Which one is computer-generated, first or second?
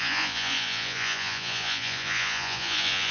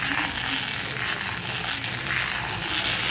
first